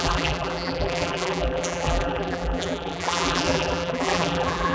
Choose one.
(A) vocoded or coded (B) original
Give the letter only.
A